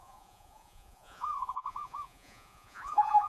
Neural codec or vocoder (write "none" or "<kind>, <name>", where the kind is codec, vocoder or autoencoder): vocoder, Vocos